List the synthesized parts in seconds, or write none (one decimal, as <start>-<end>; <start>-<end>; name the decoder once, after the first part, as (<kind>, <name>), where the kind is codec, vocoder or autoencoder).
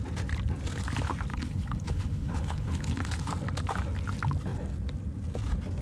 1.3-3.3 (codec, HILCodec)